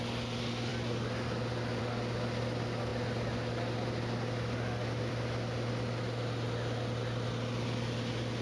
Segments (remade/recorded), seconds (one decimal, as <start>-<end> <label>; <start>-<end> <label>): 0.0-8.4 recorded